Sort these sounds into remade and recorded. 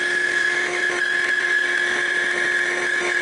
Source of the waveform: recorded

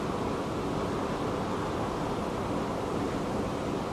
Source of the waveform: recorded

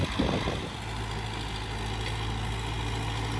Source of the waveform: recorded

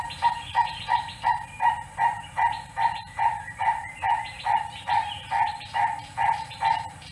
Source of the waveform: remade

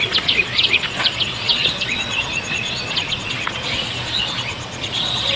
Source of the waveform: remade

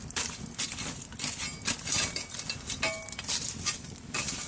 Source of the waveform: recorded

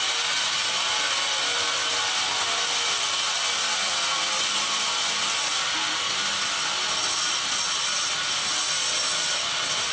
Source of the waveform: recorded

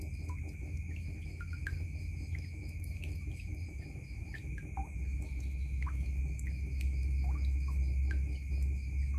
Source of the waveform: remade